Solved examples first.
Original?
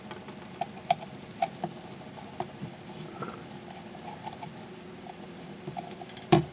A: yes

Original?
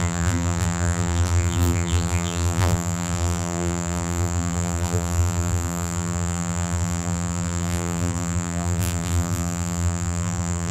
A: no